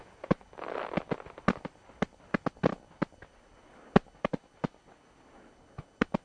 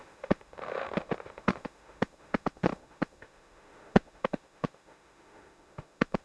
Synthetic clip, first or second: second